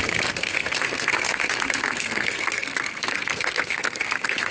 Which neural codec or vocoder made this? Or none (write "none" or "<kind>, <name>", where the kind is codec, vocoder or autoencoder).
codec, SNAC